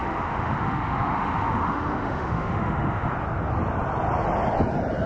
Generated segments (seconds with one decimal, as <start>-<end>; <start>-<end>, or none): 0.0-3.1